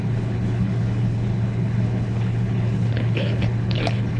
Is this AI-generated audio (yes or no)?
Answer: yes